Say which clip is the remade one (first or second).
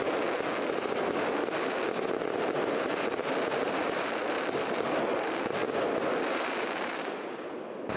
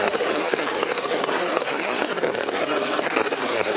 second